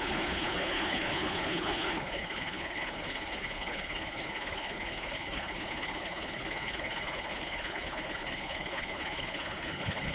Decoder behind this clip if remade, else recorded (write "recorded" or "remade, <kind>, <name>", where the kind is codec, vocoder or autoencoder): remade, codec, HILCodec